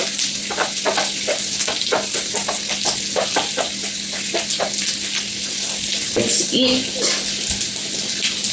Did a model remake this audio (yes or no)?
no